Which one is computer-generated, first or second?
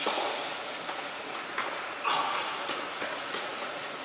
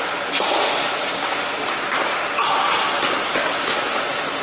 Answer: first